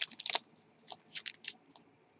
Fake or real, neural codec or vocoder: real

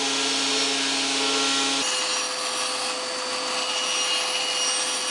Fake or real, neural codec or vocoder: real